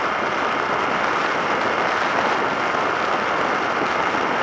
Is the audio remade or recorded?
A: recorded